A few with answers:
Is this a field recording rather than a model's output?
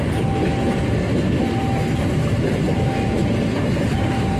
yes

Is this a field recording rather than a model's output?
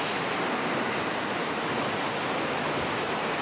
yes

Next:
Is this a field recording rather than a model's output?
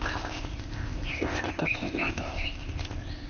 no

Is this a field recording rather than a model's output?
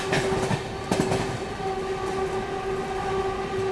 yes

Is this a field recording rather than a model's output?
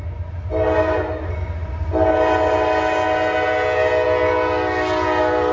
yes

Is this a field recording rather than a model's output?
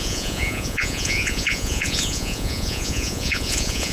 no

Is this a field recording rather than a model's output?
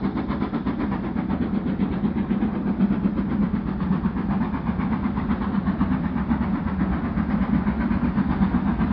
yes